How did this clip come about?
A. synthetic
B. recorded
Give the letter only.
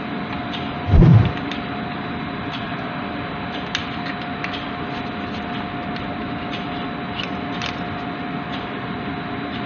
B